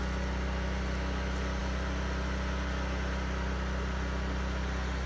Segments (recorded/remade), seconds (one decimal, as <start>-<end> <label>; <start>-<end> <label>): 0.0-5.1 recorded